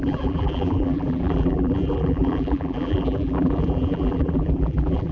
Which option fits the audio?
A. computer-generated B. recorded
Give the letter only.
A